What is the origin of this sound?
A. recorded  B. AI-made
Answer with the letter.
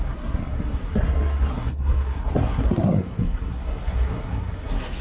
B